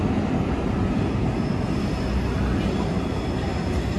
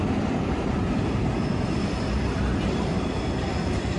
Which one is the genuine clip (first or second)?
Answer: first